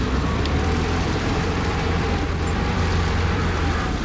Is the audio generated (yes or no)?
yes